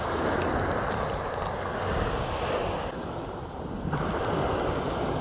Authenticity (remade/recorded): recorded